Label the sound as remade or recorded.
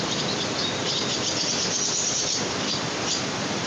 remade